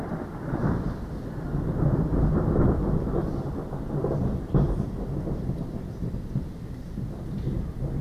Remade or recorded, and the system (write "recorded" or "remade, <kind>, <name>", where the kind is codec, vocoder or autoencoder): recorded